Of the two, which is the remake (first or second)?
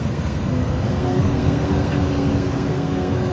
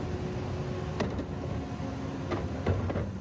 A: first